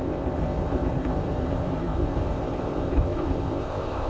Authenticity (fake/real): fake